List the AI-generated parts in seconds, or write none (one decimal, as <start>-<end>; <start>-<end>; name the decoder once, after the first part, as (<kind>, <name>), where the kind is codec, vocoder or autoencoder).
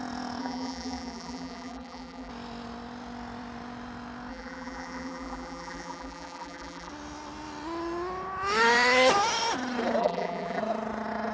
0.4-2.3 (vocoder, BigVGAN v2); 4.3-6.9; 10.0-10.6